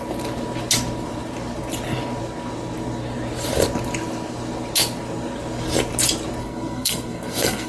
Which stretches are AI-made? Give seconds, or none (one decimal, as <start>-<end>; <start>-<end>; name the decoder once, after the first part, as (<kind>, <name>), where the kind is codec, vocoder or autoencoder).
6.4-7.7 (codec, SNAC)